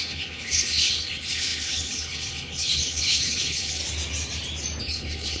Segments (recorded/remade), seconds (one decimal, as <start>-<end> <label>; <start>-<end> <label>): 0.0-3.8 remade; 3.8-4.8 recorded; 4.8-5.4 remade